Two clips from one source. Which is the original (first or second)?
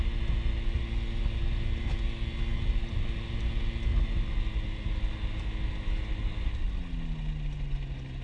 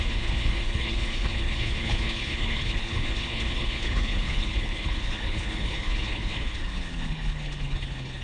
first